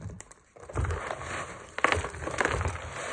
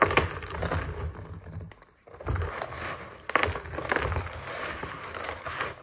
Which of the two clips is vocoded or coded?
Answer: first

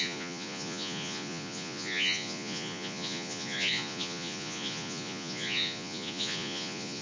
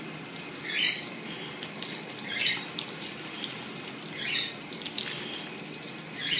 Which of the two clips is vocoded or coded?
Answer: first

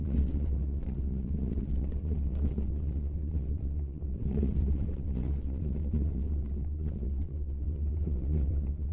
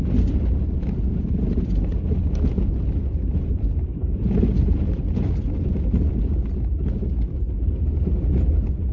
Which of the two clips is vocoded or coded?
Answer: first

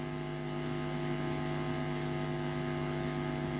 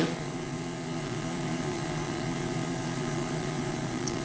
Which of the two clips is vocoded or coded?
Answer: second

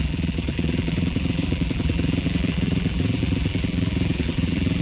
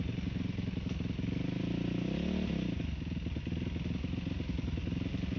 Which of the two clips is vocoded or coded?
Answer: first